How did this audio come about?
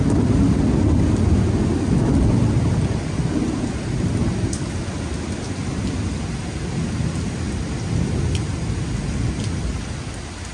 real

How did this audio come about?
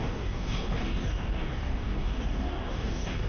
fake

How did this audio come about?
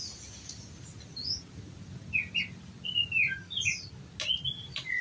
real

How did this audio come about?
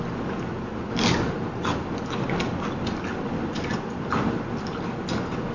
real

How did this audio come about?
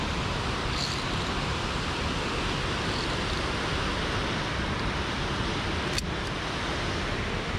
real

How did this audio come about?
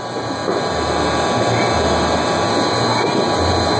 real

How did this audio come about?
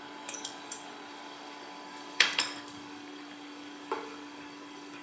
fake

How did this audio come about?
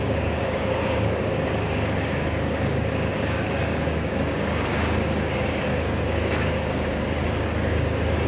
fake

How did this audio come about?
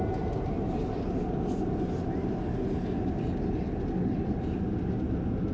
real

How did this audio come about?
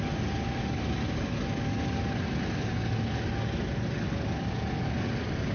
real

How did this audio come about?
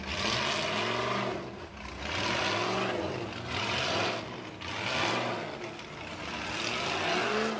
real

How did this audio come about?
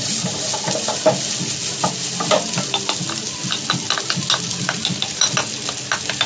real